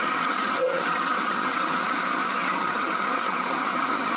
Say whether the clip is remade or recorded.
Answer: remade